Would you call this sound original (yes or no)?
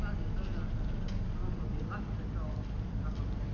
yes